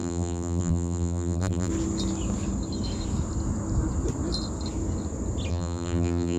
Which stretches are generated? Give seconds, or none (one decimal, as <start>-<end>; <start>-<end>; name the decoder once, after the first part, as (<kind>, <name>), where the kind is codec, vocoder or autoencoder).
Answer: 0.0-1.7 (vocoder, BigVGAN v2); 5.5-6.4